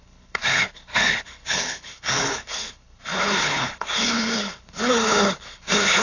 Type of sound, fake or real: fake